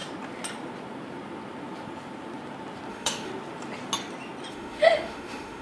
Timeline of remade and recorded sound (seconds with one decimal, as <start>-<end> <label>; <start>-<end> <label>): 0.0-2.9 recorded; 2.9-3.3 remade; 3.3-4.5 recorded; 4.5-5.6 remade